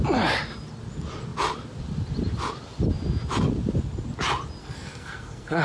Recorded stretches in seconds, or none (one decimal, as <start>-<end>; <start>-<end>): 0.0-4.6